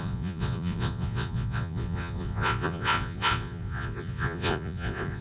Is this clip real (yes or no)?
no